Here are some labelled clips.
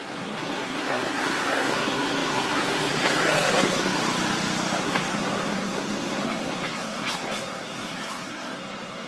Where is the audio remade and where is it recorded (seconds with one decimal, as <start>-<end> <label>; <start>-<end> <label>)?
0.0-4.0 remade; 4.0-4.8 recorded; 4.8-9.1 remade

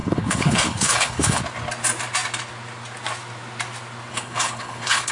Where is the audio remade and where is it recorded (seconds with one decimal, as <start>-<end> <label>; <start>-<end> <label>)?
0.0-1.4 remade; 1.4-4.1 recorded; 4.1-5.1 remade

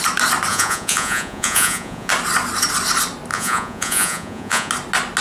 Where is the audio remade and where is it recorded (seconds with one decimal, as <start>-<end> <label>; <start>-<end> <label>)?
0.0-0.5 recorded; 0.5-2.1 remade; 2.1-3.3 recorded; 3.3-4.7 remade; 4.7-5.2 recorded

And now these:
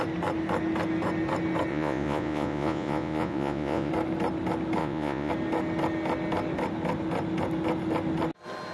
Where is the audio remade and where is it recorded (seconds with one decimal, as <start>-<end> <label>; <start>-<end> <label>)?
0.0-1.7 recorded; 1.7-3.9 remade; 3.9-4.8 recorded; 4.8-5.3 remade; 5.3-8.7 recorded

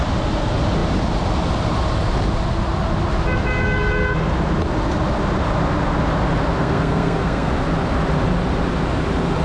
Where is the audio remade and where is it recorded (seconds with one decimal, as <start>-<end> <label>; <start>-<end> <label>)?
0.0-6.6 recorded; 6.6-7.5 remade; 7.5-9.4 recorded

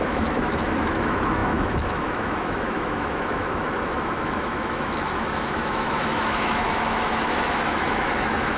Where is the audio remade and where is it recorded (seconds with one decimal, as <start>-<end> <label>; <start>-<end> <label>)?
0.0-8.6 remade